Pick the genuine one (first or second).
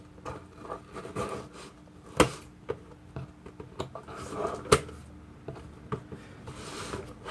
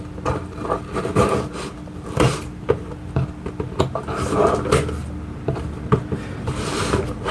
first